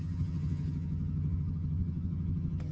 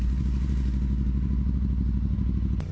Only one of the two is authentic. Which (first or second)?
second